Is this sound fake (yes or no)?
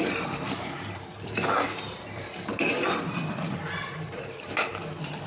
yes